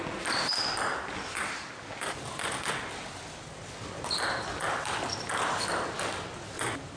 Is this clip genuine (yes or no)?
yes